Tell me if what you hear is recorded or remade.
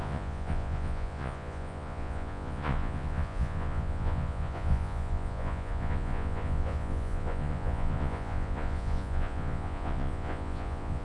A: remade